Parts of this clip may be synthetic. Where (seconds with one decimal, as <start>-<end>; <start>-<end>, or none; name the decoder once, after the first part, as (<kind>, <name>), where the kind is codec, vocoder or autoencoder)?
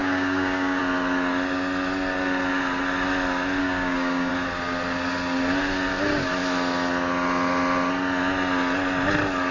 0.0-0.8 (codec, DAC); 3.6-4.3